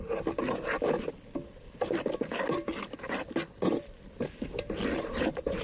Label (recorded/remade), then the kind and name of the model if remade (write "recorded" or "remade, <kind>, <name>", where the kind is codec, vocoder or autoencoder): recorded